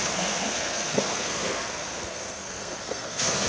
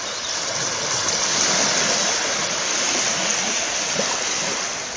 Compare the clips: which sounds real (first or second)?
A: second